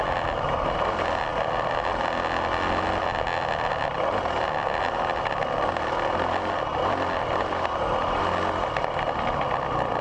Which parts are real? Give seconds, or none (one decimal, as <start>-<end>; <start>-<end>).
0.0-10.0